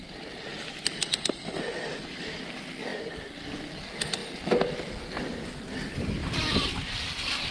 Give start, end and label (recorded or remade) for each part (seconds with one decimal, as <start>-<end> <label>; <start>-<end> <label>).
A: 0.0-0.5 recorded; 0.5-1.4 remade; 1.4-2.9 recorded; 2.9-3.8 remade; 3.8-6.2 recorded; 6.2-7.5 remade